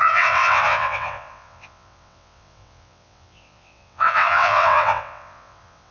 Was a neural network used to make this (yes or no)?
yes